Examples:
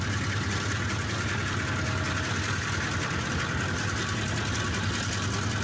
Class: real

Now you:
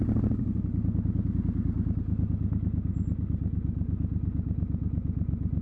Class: real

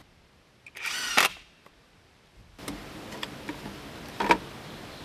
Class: real